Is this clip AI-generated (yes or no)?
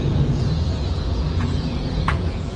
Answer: yes